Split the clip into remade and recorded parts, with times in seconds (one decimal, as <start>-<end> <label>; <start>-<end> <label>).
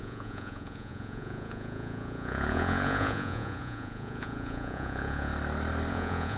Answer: 0.0-5.3 remade; 5.3-5.9 recorded; 5.9-6.4 remade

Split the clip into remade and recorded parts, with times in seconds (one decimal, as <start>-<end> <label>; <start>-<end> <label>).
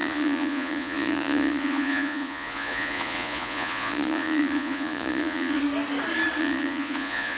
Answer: 0.0-5.6 remade; 5.6-6.4 recorded; 6.4-7.4 remade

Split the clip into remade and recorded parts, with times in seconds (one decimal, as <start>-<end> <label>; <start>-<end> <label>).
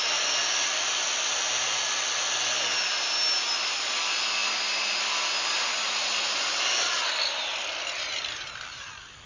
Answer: 0.0-9.3 recorded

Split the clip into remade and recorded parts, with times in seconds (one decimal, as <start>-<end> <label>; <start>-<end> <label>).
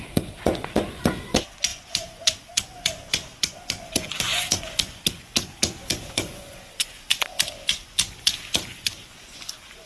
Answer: 0.0-9.9 remade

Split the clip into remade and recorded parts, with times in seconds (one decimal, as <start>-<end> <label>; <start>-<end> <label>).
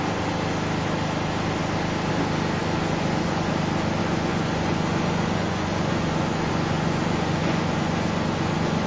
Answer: 0.0-2.6 recorded; 2.6-3.5 remade; 3.5-4.0 recorded; 4.0-8.9 remade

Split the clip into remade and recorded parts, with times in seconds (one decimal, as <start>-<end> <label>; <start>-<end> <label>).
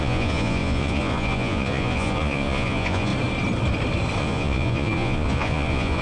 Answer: 0.0-3.1 remade; 3.1-4.2 recorded; 4.2-6.0 remade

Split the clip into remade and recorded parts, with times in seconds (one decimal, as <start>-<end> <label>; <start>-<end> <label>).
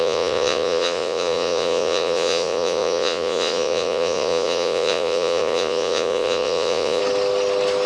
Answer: 0.0-7.0 remade; 7.0-7.9 recorded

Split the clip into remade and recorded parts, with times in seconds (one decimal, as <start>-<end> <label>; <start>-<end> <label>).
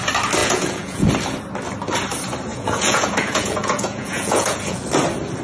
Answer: 0.0-0.4 recorded; 0.4-1.1 remade; 1.1-2.5 recorded; 2.5-4.8 remade; 4.8-5.4 recorded